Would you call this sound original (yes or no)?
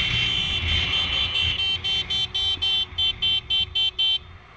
yes